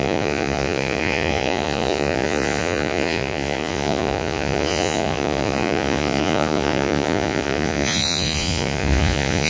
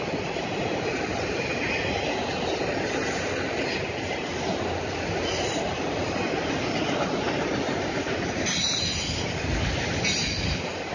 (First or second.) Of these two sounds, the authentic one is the second